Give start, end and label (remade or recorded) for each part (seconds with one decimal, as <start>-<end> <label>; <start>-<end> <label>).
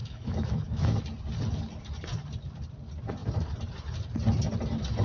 0.0-1.0 remade; 1.0-5.0 recorded